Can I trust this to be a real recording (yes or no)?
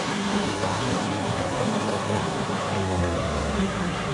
no